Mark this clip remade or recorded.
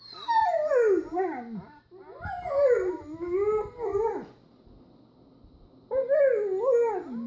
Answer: recorded